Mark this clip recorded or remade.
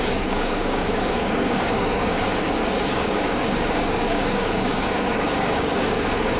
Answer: remade